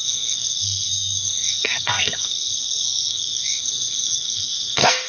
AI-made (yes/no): yes